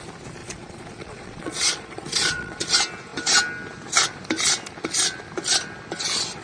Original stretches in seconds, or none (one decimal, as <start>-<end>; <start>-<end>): 0.0-0.4; 2.7-6.4